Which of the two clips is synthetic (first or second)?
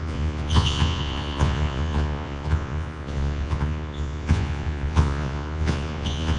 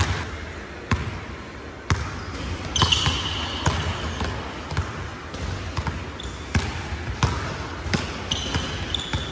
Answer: first